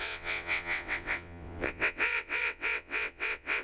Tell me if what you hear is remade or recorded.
remade